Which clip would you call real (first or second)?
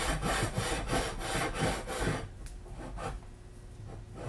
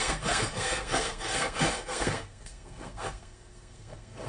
first